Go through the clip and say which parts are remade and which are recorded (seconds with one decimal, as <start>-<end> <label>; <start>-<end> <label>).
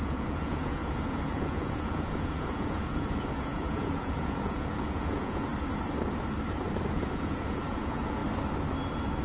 0.0-5.5 remade; 5.5-6.9 recorded; 6.9-8.2 remade; 8.2-9.2 recorded